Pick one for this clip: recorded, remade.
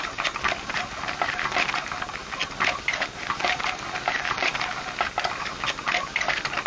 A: recorded